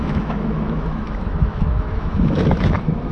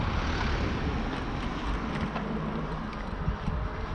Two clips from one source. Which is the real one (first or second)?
second